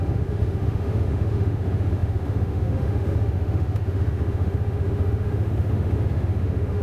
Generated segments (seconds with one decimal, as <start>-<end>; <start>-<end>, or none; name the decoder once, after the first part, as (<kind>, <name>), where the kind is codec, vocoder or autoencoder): 0.0-6.8 (autoencoder, DAC-VAE)